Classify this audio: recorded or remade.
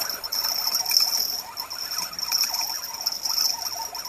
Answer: recorded